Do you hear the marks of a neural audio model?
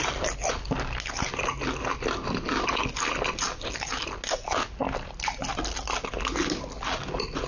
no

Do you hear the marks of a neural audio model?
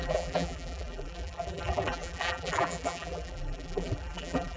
yes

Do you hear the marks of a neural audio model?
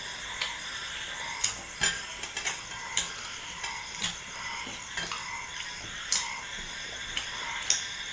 no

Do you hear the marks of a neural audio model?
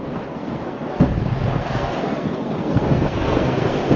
yes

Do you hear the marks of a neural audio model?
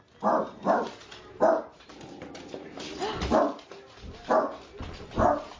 no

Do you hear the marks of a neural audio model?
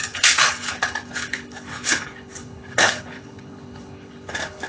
yes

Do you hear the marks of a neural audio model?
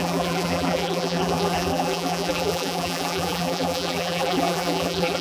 yes